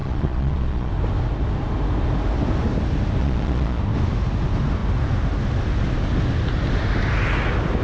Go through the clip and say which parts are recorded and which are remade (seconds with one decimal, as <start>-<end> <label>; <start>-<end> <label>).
0.0-0.9 remade; 0.9-3.2 recorded; 3.2-3.8 remade; 3.8-7.8 recorded